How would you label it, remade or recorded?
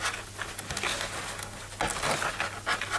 recorded